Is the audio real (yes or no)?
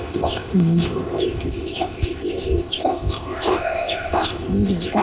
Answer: no